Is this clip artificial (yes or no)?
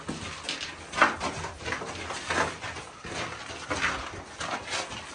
no